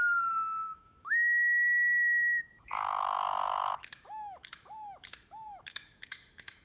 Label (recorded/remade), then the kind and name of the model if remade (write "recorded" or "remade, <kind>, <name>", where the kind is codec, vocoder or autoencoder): remade, autoencoder, DAC-VAE